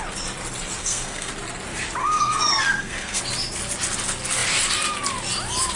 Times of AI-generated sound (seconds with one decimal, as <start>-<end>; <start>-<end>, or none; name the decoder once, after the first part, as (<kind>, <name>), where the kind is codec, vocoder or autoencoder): 0.8-1.3 (codec, SNAC); 2.0-3.2